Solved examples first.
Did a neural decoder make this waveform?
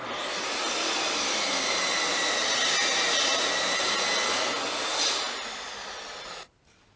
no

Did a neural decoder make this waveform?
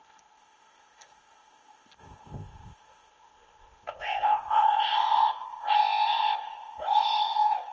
yes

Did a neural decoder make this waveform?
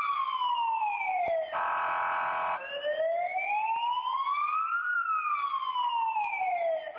no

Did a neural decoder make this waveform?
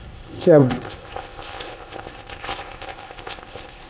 yes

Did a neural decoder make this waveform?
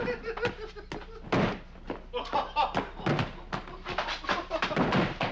no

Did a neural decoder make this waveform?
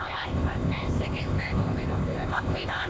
yes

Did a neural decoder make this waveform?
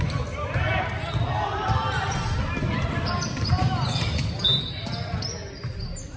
no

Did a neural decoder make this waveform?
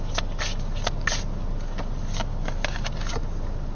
no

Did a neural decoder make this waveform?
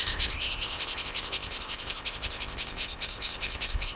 yes